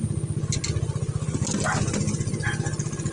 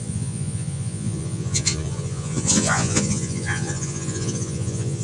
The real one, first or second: first